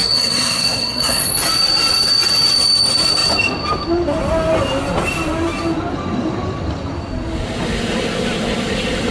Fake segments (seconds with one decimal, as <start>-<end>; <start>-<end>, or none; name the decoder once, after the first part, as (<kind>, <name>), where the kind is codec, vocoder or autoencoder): 0.0-1.2 (codec, SNAC)